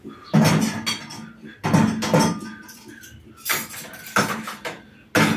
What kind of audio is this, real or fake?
real